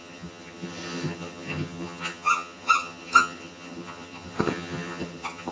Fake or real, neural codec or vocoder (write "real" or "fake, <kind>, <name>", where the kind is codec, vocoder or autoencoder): fake, vocoder, HiFi-GAN